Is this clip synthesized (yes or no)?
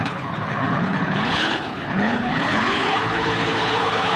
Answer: yes